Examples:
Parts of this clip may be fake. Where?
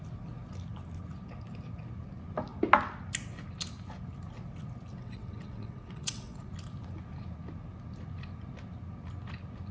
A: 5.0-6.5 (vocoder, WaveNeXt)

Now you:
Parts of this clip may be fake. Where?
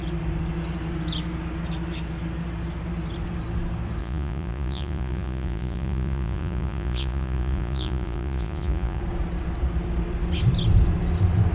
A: 4.0-9.0 (vocoder, Vocos)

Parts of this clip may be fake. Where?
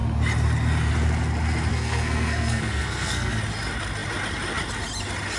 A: 1.7-3.4 (codec, SNAC)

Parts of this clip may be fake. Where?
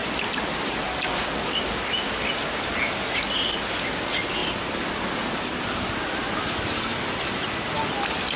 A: none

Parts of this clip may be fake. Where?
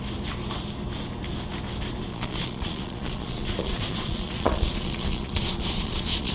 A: 2.1-6.3 (vocoder, Vocos)